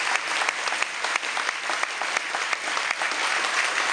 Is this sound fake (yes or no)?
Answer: no